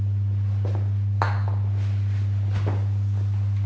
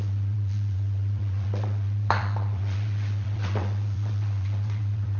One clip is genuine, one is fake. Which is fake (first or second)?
second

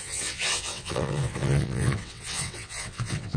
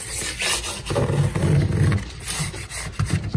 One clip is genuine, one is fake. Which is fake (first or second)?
first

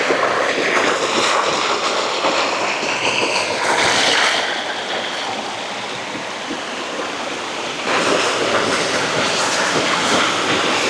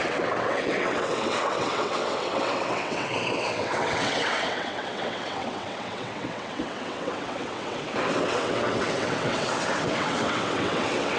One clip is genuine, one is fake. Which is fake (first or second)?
second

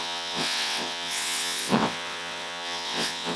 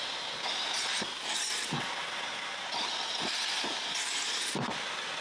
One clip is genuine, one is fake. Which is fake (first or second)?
first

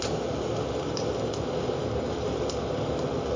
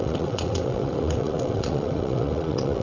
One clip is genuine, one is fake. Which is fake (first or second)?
second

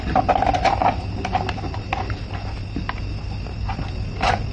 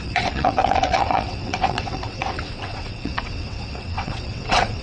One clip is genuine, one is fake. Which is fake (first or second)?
second